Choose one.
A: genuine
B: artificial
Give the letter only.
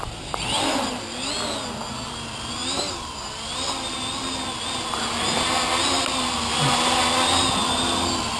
A